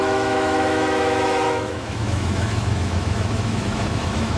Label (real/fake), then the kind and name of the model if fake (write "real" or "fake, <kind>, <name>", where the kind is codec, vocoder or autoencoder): fake, autoencoder, DAC-VAE